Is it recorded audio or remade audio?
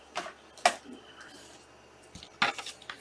recorded